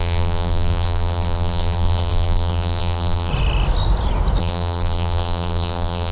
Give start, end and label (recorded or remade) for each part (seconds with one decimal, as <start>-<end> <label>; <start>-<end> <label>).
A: 0.0-3.3 remade; 3.3-4.4 recorded; 4.4-6.1 remade